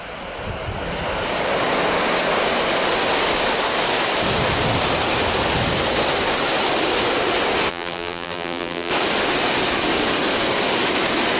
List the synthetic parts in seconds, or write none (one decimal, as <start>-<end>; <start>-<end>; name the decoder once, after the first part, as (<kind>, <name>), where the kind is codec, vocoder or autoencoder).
7.7-8.9 (vocoder, BigVGAN v2)